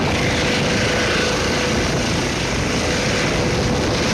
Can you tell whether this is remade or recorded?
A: recorded